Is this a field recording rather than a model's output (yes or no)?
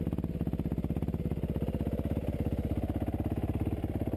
yes